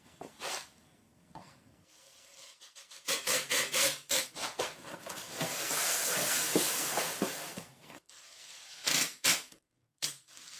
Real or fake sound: fake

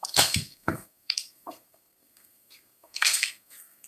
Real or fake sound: fake